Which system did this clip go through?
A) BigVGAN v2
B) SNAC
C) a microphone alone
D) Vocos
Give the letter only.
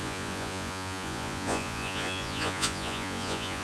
D